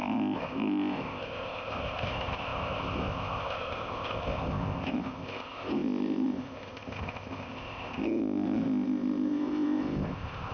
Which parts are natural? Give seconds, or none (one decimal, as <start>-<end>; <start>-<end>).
none